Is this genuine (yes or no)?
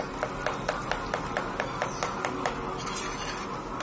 yes